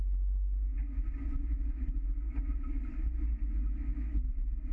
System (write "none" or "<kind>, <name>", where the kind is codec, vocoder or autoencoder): none